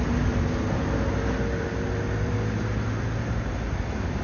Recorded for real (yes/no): yes